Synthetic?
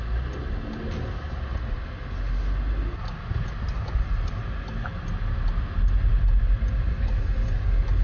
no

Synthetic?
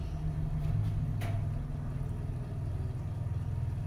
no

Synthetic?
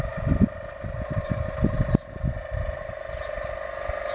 no